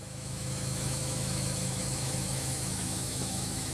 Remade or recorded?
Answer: remade